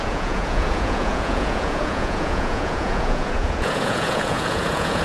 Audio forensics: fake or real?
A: fake